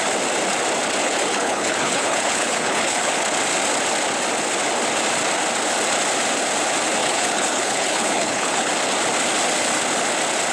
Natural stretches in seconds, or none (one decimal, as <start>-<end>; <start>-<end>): 0.0-1.0; 3.1-7.0; 8.7-10.5